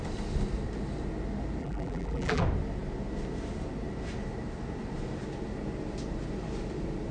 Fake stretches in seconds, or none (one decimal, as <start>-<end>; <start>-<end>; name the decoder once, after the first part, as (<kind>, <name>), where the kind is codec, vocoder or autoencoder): 1.6-2.4 (vocoder, BigVGAN v2)